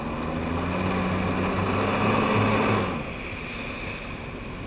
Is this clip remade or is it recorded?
recorded